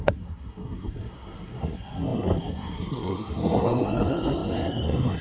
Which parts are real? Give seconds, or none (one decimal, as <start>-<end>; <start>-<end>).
none

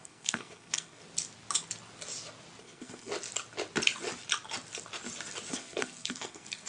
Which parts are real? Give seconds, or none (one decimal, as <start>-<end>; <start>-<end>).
1.0-2.6; 3.1-5.5

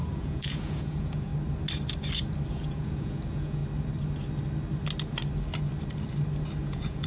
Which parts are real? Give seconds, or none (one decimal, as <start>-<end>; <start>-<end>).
1.3-2.5; 3.6-6.6

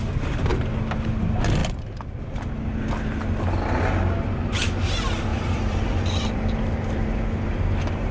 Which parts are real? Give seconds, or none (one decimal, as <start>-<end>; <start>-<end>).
0.0-1.6; 2.2-5.3; 7.2-8.1

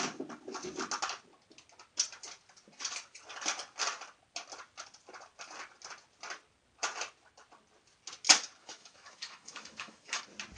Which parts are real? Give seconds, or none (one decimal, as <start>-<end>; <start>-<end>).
0.0-8.6; 10.2-10.6

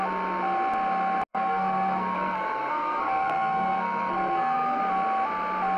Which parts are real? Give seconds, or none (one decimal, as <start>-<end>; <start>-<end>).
0.0-1.3; 4.8-5.8